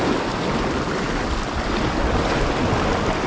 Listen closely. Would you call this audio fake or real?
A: real